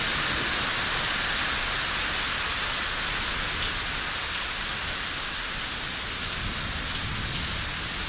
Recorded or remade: recorded